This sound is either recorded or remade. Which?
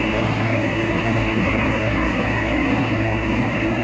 remade